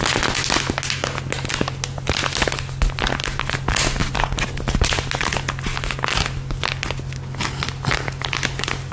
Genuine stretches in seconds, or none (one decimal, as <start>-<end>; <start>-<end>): 0.0-8.9

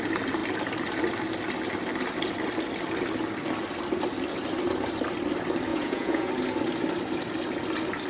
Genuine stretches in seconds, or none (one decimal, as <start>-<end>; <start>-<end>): 0.0-5.7; 6.3-8.1

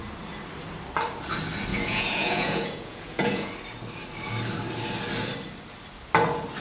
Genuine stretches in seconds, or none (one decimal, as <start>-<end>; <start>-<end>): 0.0-1.7; 3.5-6.6

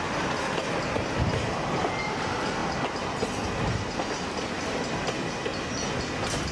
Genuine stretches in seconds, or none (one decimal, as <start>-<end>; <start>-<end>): 0.0-6.5

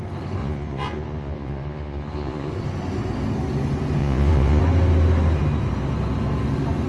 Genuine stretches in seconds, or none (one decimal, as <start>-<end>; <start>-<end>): 0.0-0.4; 2.5-4.0; 4.6-6.9